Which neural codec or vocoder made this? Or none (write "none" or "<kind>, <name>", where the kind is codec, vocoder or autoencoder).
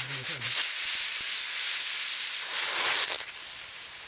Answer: none